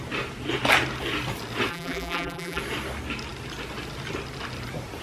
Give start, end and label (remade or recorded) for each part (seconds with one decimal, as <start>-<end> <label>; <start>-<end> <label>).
0.0-1.7 recorded; 1.7-2.6 remade; 2.6-5.0 recorded